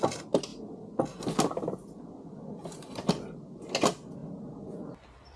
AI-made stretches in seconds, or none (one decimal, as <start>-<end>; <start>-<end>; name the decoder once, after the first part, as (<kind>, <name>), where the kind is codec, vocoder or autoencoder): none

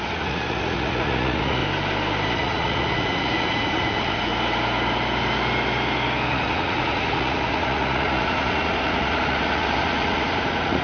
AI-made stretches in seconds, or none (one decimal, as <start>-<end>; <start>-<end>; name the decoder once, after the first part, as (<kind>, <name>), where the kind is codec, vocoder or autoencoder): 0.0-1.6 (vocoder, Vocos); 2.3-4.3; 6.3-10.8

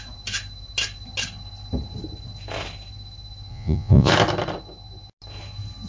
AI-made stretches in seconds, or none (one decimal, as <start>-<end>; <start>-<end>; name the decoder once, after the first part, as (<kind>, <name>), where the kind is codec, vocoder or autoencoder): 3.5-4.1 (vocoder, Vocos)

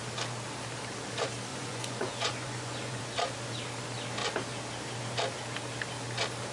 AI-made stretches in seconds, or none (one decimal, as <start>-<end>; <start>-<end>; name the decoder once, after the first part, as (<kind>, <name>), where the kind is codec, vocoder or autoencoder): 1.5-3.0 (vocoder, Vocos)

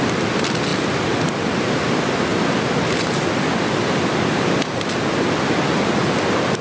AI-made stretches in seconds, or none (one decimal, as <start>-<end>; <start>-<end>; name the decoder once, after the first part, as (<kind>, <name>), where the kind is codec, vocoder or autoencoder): none